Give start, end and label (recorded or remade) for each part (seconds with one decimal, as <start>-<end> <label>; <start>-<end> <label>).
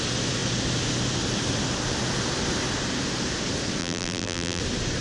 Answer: 0.0-3.8 recorded; 3.8-4.6 remade; 4.6-5.0 recorded